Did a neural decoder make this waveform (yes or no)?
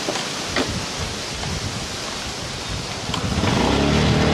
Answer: no